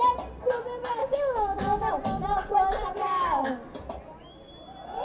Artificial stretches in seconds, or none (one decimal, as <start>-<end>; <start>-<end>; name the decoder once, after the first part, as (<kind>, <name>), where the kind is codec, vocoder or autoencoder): 1.0-1.9 (codec, DAC); 3.0-3.5